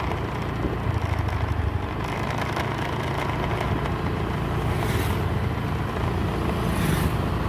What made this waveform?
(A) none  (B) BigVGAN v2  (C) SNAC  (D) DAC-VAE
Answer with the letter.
A